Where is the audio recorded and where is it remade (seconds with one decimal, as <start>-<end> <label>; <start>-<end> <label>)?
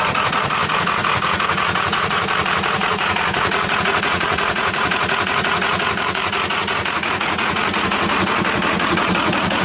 0.0-9.6 remade